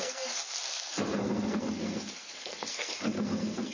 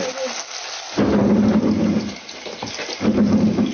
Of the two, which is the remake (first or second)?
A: first